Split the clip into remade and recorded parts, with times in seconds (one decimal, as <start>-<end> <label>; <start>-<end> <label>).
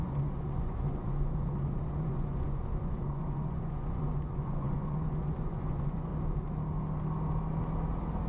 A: 0.0-6.1 remade; 6.1-8.3 recorded